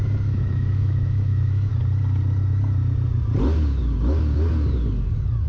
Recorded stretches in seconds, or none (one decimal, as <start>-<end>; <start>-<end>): 1.7-5.5